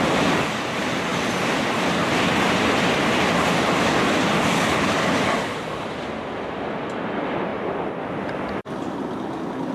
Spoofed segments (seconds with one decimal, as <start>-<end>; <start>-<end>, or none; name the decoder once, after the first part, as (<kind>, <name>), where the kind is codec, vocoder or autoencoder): none